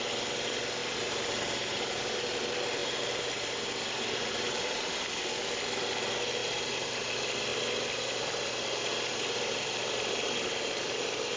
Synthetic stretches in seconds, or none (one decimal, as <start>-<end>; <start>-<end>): 0.8-2.3; 2.8-5.2; 6.4-7.1